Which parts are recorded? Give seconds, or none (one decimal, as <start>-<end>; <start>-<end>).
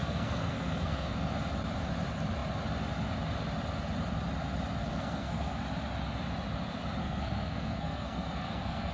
1.3-4.8; 5.6-7.0